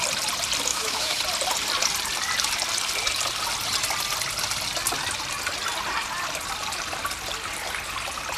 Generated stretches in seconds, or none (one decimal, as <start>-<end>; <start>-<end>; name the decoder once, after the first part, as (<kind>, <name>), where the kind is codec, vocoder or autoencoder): 0.7-1.2 (autoencoder, DAC-VAE)